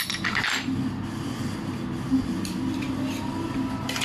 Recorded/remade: recorded